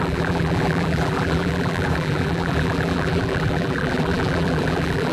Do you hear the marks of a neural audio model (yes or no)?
yes